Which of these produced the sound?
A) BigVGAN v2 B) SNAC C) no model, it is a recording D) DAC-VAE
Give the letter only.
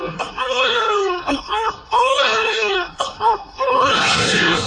B